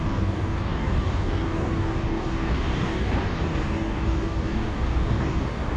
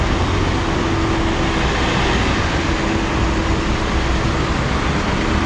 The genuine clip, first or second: second